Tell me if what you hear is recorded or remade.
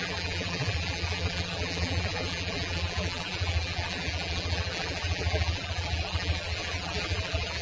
remade